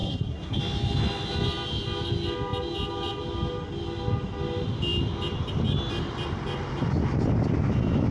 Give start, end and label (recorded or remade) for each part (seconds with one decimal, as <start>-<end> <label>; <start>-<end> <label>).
0.0-0.6 remade; 0.6-8.1 recorded